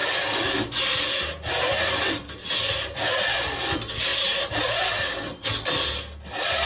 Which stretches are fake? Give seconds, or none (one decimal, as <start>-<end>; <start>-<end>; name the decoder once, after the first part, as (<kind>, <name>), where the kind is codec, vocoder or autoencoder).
4.1-4.8 (vocoder, BigVGAN v2)